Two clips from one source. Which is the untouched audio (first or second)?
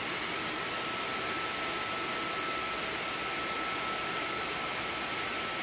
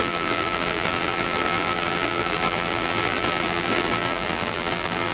first